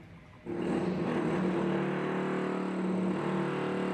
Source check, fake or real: real